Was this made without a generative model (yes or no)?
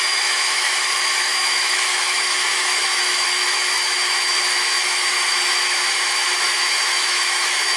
no